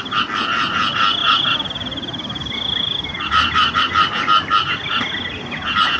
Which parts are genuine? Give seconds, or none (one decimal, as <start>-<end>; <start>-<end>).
0.0-1.2; 3.8-6.0

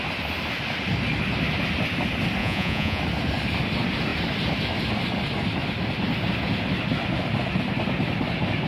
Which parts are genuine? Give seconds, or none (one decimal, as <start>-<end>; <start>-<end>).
0.0-2.4; 3.0-8.7

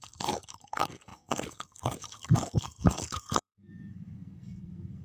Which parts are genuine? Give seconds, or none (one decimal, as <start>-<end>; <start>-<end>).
none

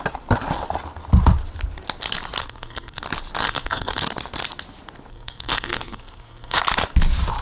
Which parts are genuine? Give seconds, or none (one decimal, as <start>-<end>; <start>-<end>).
0.0-2.4; 3.0-3.4; 4.0-5.1; 6.6-7.4

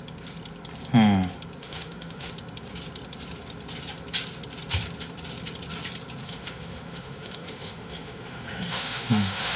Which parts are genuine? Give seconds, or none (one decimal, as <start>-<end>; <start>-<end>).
0.0-1.6; 2.3-6.2